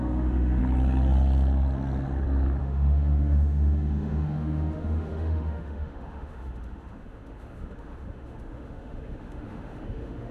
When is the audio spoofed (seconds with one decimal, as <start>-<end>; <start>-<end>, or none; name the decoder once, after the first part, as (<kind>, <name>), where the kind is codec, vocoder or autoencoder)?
0.0-0.6 (autoencoder, DAC-VAE); 2.6-10.3

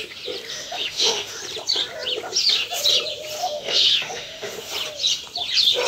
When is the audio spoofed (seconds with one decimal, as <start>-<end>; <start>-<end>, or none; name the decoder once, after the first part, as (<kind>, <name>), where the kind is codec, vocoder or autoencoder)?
0.5-1.4 (autoencoder, DAC-VAE); 3.4-4.7

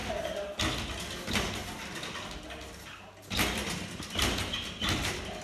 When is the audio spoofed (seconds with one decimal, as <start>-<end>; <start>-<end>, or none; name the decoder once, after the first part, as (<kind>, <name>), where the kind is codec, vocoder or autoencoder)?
none

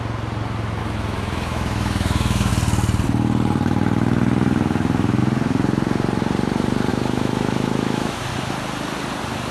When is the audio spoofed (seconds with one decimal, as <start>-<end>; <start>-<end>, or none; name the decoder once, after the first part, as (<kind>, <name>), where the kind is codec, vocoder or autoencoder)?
0.8-2.5 (autoencoder, DAC-VAE); 6.9-8.3

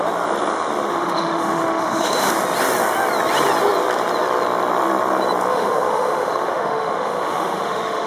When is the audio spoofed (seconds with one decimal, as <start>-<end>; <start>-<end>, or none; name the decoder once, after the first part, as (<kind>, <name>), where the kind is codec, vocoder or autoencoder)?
0.9-2.3 (autoencoder, DAC-VAE); 5.5-8.1